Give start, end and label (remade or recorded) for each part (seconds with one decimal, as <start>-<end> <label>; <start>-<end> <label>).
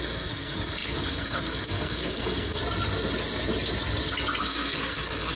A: 0.0-2.6 remade; 2.6-4.4 recorded; 4.4-5.4 remade